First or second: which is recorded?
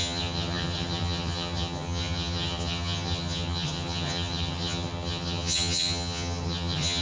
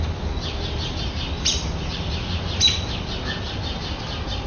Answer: second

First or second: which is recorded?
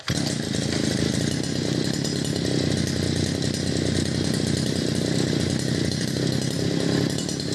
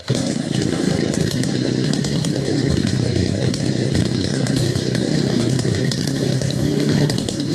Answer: first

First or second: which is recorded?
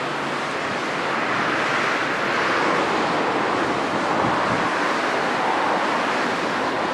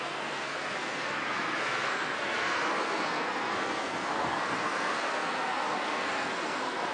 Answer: first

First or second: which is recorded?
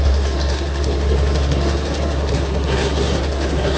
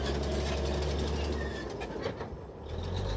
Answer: second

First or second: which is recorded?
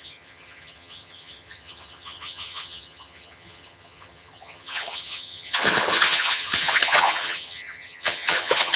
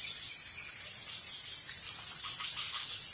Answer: second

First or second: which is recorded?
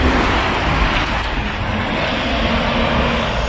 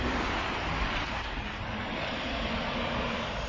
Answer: first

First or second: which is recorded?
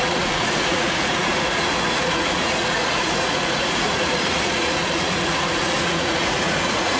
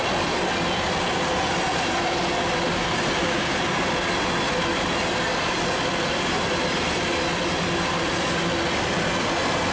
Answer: second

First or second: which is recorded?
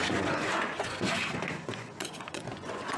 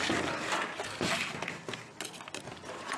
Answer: second